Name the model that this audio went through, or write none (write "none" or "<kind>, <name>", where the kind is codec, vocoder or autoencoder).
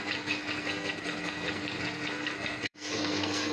codec, SNAC